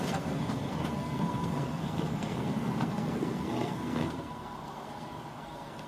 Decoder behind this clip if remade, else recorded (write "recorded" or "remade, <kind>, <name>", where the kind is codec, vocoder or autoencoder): remade, codec, SNAC